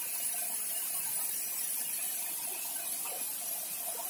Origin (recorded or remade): recorded